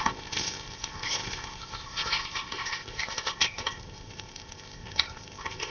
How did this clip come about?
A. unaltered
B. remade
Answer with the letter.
B